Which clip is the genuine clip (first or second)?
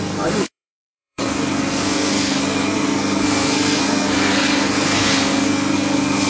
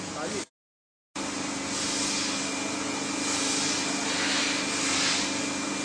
second